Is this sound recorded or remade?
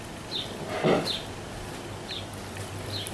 recorded